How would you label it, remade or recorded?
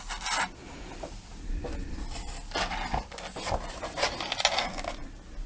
recorded